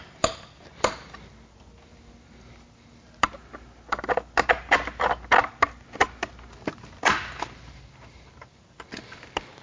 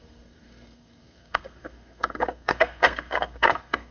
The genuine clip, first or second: first